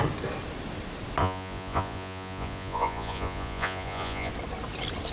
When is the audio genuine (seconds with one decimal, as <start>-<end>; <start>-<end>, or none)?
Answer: 0.0-1.2; 4.3-5.1